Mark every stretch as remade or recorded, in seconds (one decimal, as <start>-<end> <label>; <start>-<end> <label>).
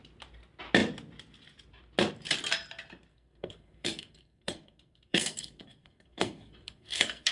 0.0-3.1 recorded; 3.1-7.3 remade